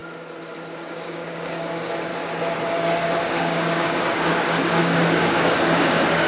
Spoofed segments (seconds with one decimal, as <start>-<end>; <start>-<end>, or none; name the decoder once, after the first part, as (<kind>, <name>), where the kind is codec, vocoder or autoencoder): 0.9-2.1 (codec, DAC); 2.7-6.3